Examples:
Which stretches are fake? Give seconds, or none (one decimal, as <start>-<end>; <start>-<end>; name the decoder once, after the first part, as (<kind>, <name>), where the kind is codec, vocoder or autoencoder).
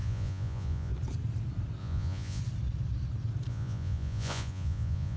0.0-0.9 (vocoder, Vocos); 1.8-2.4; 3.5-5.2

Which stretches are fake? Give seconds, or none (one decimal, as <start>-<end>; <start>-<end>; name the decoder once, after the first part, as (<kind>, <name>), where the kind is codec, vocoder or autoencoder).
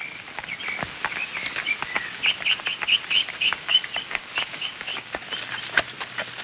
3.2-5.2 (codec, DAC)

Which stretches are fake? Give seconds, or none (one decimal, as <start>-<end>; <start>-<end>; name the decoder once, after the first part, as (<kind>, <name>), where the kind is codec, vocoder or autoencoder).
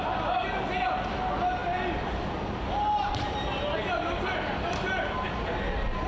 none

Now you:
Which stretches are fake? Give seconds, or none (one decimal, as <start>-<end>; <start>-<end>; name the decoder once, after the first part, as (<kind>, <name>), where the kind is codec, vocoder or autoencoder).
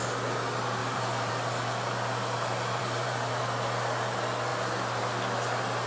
0.8-1.3 (vocoder, BigVGAN v2); 2.8-3.4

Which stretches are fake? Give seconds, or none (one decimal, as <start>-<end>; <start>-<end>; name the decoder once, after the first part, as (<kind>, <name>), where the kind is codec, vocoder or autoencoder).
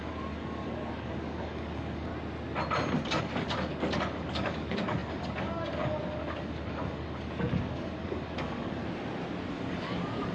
0.0-2.1 (codec, DAC); 3.2-8.8; 9.5-10.3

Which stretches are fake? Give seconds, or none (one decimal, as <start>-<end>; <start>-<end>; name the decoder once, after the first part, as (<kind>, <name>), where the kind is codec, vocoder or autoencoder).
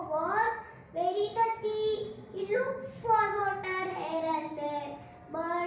1.3-2.9 (vocoder, BigVGAN v2); 3.4-4.5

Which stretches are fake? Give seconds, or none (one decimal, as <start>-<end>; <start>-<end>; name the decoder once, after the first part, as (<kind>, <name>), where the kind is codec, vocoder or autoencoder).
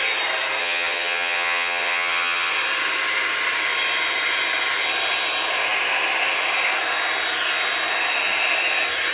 0.6-2.5 (vocoder, HiFi-GAN)